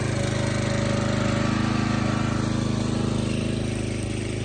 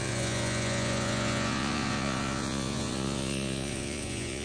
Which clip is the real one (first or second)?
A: first